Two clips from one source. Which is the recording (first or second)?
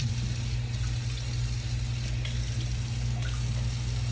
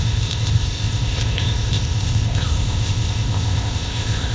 first